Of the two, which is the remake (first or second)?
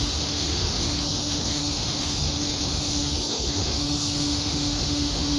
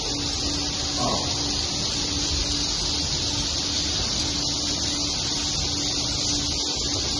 first